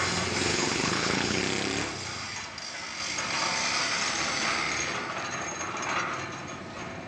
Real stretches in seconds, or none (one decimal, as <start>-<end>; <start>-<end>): 0.0-0.5; 1.4-7.1